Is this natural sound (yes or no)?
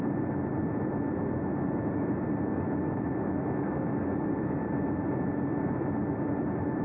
yes